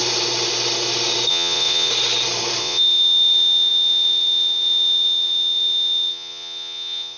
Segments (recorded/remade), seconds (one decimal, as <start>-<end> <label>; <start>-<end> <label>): 0.0-1.3 recorded; 1.3-1.9 remade; 1.9-2.6 recorded; 2.6-7.2 remade